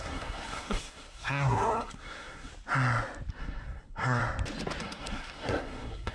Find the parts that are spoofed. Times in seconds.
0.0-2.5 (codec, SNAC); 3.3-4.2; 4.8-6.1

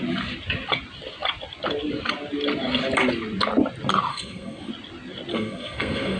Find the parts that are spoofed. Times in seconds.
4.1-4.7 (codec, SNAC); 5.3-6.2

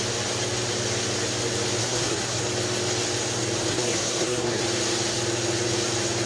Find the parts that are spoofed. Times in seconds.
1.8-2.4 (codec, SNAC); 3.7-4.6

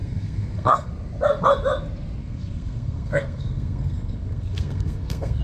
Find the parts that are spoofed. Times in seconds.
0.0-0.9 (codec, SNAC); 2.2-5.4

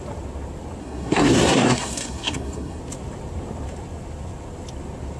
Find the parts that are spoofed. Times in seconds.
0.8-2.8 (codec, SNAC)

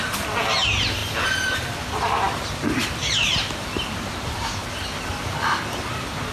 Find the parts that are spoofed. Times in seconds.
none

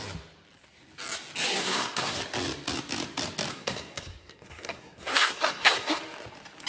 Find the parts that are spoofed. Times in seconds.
1.5-2.2 (codec, SNAC); 3.5-6.0

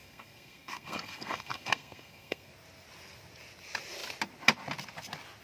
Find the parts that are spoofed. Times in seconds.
0.0-2.5 (codec, SNAC)